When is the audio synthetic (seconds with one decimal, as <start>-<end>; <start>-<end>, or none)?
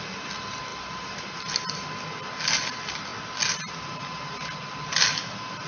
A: 0.7-1.9